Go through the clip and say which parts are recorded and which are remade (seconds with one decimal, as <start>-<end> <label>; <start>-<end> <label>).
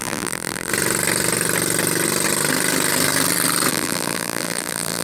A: 0.0-0.7 remade; 0.7-3.7 recorded; 3.7-5.0 remade